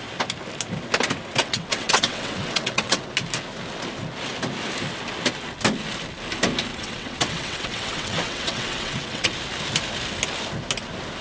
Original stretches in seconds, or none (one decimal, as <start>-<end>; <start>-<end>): 0.0-1.4; 3.0-6.7; 9.3-11.2